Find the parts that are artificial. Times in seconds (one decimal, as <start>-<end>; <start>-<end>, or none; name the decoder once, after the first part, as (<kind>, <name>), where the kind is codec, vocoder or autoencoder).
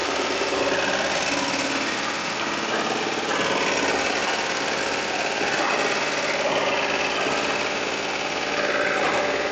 0.0-0.6 (vocoder, BigVGAN v2)